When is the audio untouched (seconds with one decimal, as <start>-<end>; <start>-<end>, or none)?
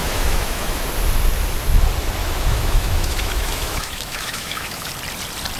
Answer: 0.8-2.2; 4.9-5.6